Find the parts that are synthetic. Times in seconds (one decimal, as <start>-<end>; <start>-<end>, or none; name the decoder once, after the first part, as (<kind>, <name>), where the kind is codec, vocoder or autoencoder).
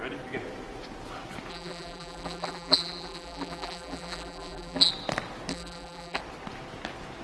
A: 1.5-4.9 (vocoder, BigVGAN v2); 5.5-6.2